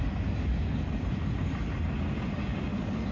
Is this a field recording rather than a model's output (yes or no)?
yes